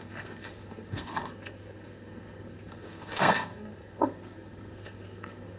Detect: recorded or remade remade